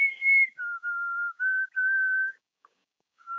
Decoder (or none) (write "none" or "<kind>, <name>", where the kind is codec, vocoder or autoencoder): codec, DAC